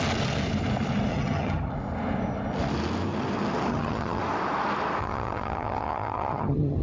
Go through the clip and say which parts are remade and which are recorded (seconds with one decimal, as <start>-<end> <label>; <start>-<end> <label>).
0.0-1.1 recorded; 1.1-1.7 remade; 1.7-3.7 recorded; 3.7-4.2 remade; 4.2-5.0 recorded; 5.0-6.8 remade